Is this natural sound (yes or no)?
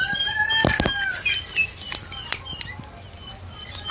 yes